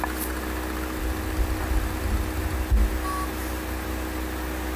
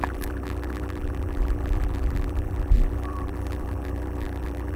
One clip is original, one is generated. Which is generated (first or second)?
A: second